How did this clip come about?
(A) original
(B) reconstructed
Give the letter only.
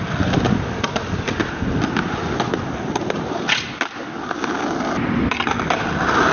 A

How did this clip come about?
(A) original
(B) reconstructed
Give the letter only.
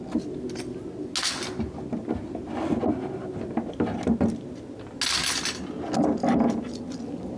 A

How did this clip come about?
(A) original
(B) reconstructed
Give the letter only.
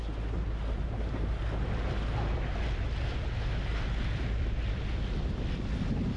A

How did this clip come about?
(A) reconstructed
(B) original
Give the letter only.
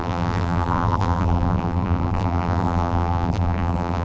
A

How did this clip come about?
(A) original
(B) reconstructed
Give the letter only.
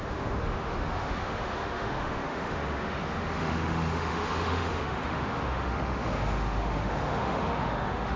B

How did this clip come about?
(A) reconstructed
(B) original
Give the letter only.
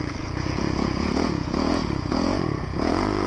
A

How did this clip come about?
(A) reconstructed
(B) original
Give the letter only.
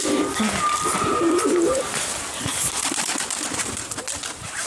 B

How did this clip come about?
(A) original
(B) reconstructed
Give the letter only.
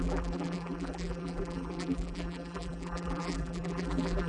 B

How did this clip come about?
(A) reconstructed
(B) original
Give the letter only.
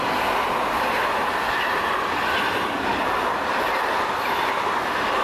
B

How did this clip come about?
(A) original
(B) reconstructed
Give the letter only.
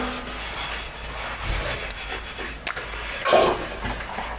A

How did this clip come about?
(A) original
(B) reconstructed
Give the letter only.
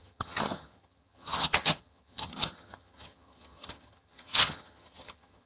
B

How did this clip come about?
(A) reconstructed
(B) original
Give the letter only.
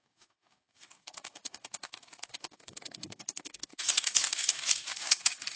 A